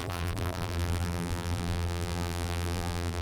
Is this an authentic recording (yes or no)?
no